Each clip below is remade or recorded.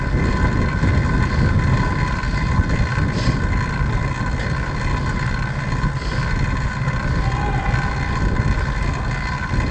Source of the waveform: recorded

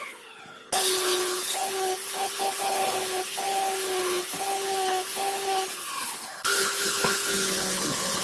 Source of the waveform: remade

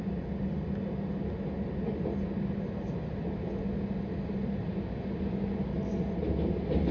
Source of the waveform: recorded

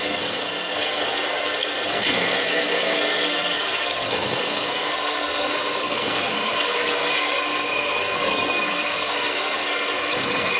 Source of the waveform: remade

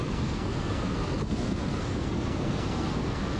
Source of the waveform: remade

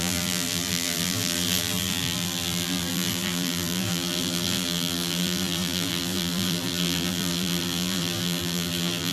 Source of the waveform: remade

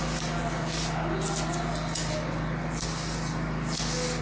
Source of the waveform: recorded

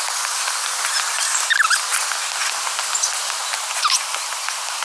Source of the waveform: recorded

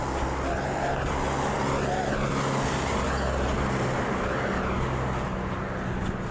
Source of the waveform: recorded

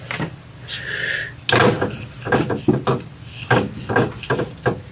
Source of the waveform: recorded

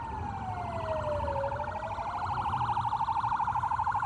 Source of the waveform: recorded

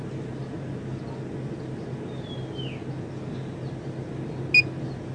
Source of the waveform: recorded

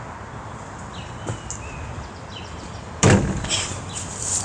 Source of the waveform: recorded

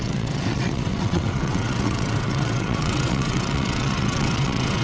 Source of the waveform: remade